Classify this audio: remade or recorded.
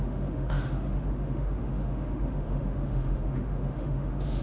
remade